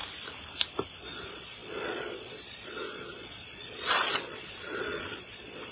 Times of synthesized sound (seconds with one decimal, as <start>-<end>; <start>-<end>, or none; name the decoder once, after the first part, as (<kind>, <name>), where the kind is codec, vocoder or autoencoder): 1.0-5.7 (vocoder, Vocos)